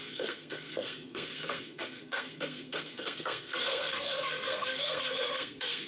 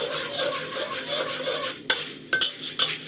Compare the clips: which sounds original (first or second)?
second